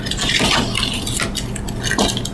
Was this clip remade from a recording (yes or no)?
no